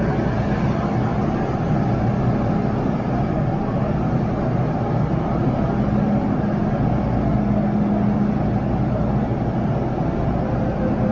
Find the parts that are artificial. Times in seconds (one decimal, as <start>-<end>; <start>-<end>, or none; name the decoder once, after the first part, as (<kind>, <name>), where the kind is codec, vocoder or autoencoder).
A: none